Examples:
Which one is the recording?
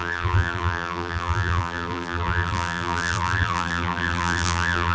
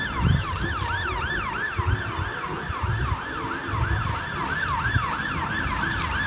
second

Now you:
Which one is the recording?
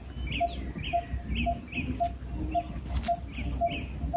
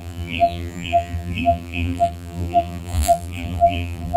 first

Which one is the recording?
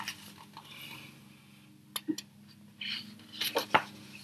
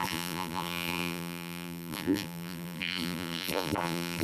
first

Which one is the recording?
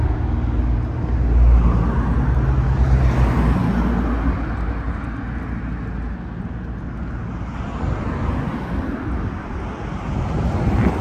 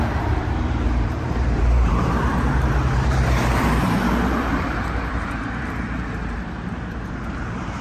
first